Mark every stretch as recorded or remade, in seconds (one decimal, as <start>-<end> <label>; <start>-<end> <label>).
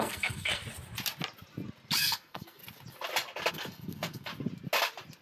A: 0.0-0.6 remade; 0.6-2.0 recorded; 2.0-2.6 remade; 2.6-3.5 recorded; 3.5-4.3 remade; 4.3-5.2 recorded